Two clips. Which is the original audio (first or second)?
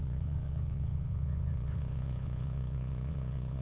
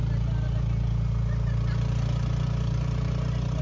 second